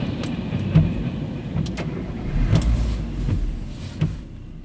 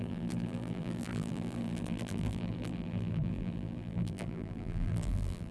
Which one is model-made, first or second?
second